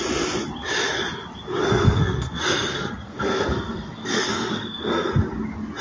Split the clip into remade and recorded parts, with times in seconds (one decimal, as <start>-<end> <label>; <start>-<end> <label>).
0.0-1.6 recorded; 1.6-5.1 remade; 5.1-5.8 recorded